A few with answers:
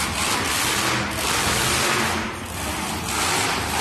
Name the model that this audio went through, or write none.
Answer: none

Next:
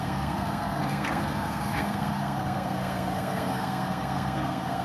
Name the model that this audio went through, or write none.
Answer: codec, SNAC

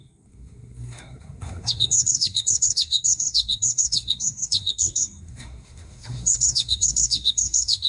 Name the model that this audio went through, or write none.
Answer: codec, SNAC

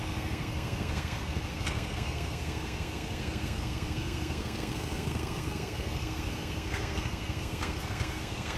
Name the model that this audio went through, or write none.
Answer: codec, SNAC